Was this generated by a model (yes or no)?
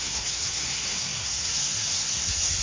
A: yes